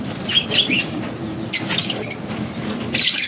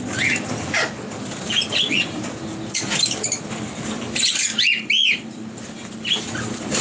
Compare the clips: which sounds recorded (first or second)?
second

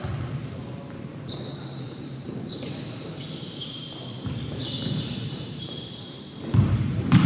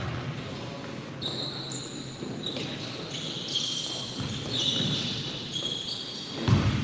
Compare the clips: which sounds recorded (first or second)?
second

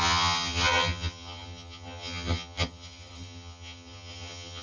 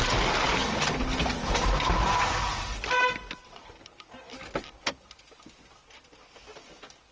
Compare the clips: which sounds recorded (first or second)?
second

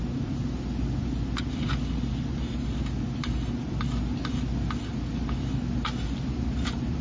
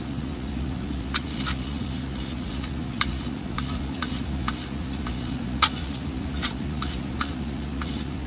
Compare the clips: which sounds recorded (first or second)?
first